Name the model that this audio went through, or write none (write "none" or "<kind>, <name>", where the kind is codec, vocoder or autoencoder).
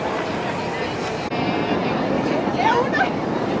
none